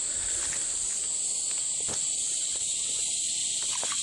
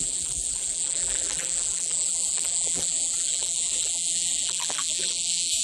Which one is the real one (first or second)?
first